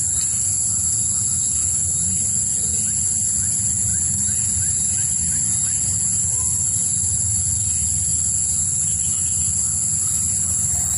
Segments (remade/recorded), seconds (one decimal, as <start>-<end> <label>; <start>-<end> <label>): 0.0-3.9 recorded; 3.9-7.5 remade; 7.5-11.0 recorded